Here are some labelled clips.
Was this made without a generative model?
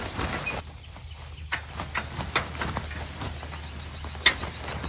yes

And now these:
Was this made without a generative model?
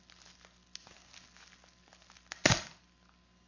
yes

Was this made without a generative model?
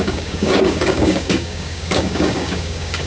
no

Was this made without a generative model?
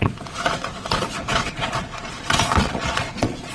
no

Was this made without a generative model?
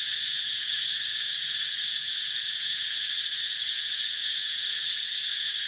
no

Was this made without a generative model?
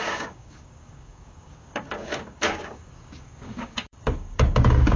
no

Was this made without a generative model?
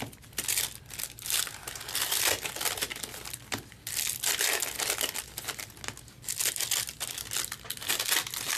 yes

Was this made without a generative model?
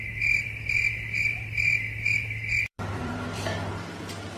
no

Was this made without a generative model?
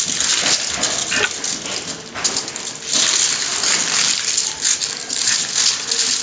yes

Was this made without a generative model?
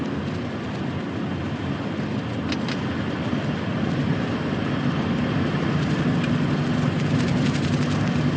yes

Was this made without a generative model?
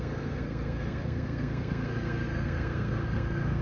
no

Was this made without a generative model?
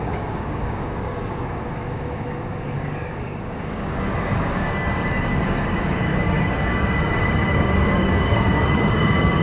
no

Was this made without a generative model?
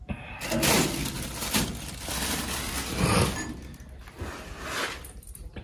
yes